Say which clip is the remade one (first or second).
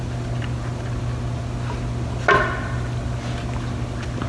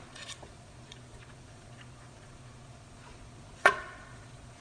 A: second